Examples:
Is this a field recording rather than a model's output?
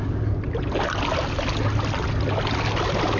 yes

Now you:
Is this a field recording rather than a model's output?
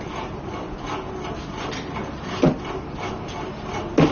yes